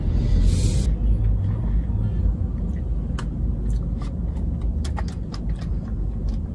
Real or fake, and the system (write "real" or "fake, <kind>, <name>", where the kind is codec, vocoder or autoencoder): real